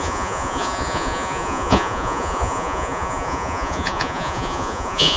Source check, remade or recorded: remade